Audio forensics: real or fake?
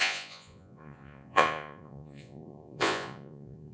fake